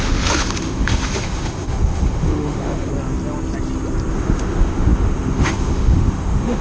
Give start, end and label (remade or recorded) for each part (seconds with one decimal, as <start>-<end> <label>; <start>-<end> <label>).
0.0-2.9 remade; 2.9-4.1 recorded; 4.1-6.6 remade